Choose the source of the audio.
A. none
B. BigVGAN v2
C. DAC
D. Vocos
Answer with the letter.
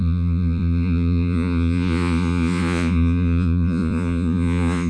D